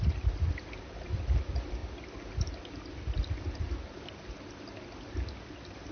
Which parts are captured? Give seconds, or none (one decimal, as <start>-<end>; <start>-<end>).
0.0-5.9